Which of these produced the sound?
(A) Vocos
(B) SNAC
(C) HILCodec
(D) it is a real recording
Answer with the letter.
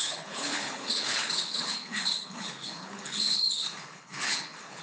C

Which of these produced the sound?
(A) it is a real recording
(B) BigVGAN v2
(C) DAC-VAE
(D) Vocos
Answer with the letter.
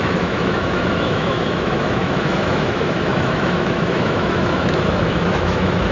C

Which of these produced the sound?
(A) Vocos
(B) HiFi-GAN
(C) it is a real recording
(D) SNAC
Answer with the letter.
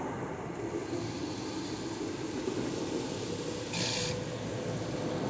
C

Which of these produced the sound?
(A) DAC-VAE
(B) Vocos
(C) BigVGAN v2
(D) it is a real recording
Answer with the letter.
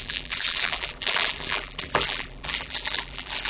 C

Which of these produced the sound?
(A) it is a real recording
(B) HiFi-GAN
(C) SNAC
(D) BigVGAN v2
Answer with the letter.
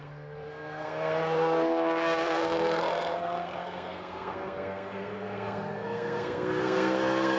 C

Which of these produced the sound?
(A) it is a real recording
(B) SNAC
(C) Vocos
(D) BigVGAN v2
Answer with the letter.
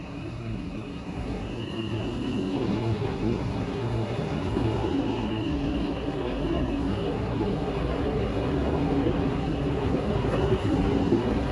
B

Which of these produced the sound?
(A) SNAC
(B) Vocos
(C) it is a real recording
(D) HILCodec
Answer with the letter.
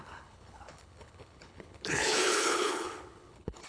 D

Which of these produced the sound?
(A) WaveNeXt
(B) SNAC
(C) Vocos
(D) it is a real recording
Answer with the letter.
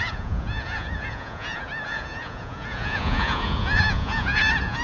C